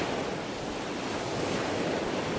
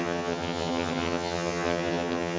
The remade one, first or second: second